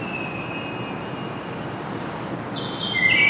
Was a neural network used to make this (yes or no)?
no